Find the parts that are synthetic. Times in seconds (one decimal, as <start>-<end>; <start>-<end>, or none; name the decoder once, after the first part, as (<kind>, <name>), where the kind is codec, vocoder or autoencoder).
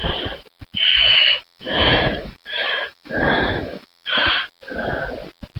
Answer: 0.9-4.3 (autoencoder, DAC-VAE)